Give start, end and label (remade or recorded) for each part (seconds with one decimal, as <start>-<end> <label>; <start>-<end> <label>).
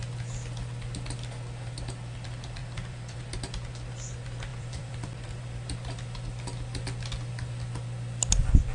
0.0-2.6 recorded; 2.6-3.2 remade; 3.2-4.5 recorded; 4.5-5.4 remade; 5.4-8.7 recorded